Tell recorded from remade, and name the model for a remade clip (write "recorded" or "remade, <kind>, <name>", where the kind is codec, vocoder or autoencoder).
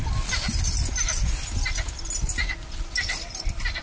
recorded